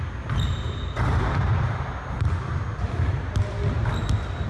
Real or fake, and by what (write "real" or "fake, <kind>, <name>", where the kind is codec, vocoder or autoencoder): real